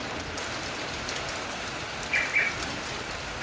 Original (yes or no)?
no